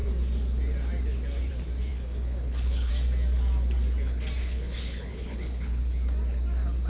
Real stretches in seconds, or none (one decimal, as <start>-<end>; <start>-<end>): 0.0-1.9; 2.9-4.4; 5.8-6.9